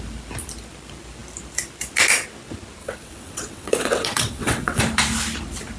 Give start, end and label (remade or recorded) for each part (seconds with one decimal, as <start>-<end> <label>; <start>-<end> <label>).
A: 0.0-2.8 recorded; 2.8-4.8 remade; 4.8-5.8 recorded